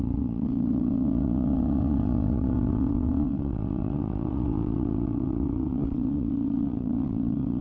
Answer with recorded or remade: remade